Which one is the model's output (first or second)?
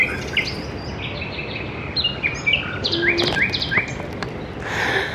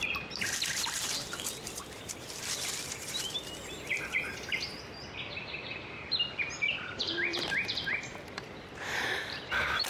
second